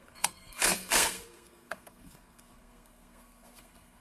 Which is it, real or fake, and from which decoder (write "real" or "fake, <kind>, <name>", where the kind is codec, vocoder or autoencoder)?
fake, codec, SNAC